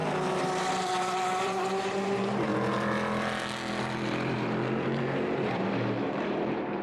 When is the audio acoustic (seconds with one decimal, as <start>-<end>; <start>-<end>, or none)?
0.0-1.4; 2.5-3.8